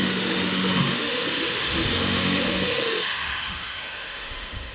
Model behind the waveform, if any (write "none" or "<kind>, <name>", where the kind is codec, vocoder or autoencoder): autoencoder, DAC-VAE